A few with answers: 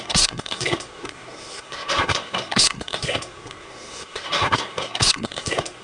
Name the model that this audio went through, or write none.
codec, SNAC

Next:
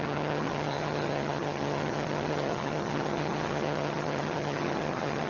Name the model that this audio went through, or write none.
vocoder, HiFi-GAN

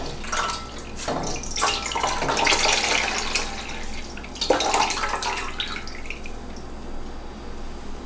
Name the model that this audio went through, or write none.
none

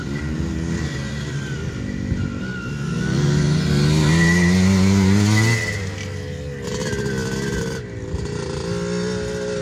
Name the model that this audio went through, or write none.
none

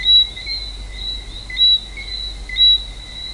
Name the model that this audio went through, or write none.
none